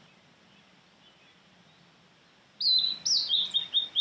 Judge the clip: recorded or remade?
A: recorded